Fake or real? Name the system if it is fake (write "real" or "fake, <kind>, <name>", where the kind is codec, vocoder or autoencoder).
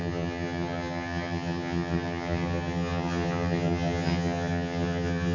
fake, vocoder, HiFi-GAN